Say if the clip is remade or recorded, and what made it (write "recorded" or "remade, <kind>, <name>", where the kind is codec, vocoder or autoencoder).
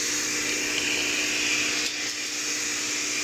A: recorded